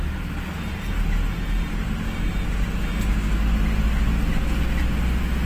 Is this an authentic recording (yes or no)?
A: yes